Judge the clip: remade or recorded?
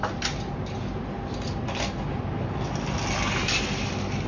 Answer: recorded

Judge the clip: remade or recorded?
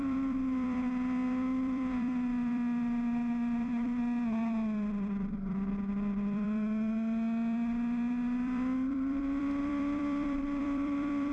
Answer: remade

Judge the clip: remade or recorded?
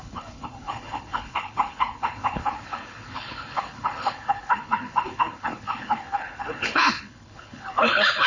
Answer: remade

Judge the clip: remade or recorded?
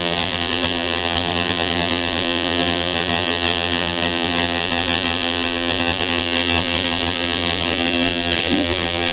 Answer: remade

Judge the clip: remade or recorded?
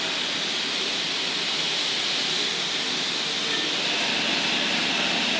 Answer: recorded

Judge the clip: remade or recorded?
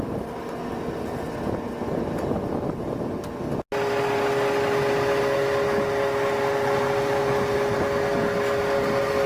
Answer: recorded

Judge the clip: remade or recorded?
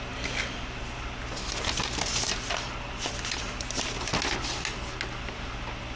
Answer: recorded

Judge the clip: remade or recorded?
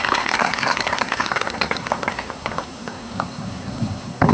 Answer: remade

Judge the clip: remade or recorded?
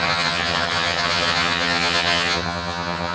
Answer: remade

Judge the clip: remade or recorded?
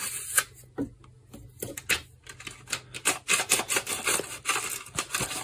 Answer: recorded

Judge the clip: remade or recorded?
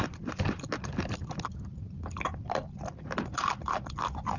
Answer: recorded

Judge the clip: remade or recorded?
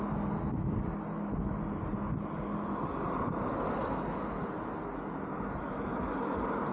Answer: recorded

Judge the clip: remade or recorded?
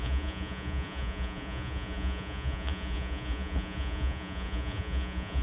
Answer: remade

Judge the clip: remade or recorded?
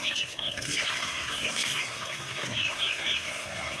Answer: remade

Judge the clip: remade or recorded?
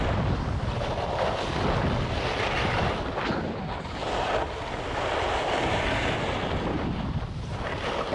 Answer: recorded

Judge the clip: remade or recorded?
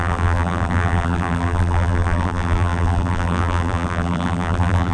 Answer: remade